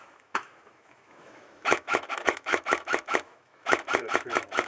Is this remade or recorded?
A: remade